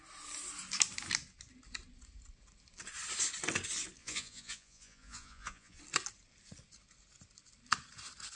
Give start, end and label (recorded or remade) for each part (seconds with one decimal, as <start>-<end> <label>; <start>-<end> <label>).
0.0-4.0 recorded; 4.0-5.8 remade; 5.8-8.4 recorded